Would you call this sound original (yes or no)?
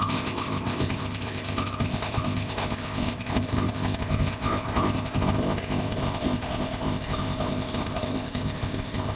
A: no